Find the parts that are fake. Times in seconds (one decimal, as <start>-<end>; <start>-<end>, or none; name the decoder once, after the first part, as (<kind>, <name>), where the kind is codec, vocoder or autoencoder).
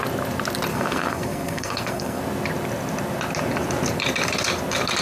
0.7-2.2 (codec, SNAC)